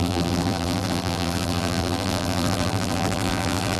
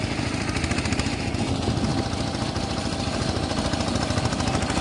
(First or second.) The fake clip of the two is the first